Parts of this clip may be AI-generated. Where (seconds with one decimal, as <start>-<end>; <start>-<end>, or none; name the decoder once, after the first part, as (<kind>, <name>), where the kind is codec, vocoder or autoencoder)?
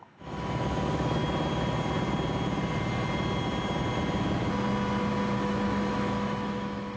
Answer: 0.0-1.2 (autoencoder, DAC-VAE); 5.4-7.0